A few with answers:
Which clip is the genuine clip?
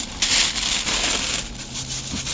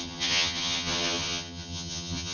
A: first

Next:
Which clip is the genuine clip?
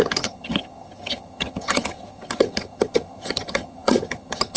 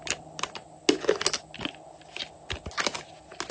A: second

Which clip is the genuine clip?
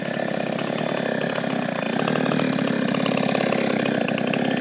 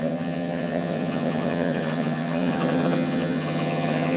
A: first